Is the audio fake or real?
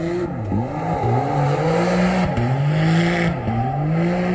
real